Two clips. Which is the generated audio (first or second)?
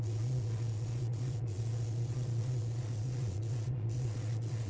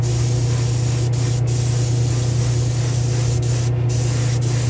first